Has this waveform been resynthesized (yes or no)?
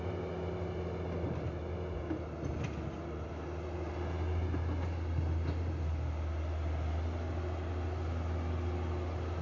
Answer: no